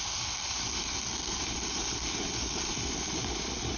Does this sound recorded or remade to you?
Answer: recorded